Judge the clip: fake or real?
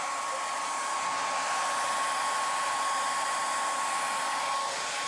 real